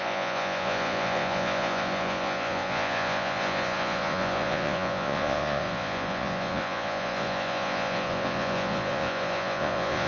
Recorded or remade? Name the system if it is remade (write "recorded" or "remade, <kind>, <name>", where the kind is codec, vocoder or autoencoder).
remade, vocoder, Vocos